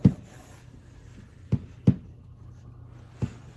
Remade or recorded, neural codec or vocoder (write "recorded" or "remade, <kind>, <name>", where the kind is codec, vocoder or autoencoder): recorded